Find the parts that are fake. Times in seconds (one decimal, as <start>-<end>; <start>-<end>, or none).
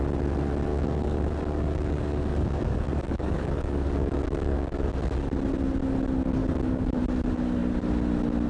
0.7-5.0; 6.4-7.0